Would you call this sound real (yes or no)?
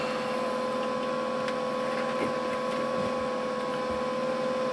yes